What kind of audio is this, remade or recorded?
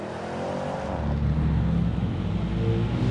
recorded